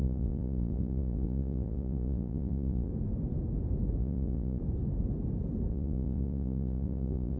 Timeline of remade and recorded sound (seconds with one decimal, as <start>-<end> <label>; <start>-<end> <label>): 0.0-2.9 remade; 2.9-4.0 recorded; 4.0-4.6 remade; 4.6-5.7 recorded; 5.7-7.4 remade